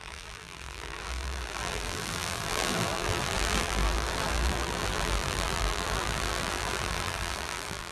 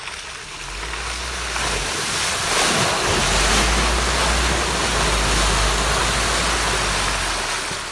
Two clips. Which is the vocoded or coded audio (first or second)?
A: first